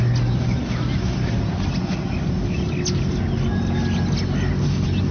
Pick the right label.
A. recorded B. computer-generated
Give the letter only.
A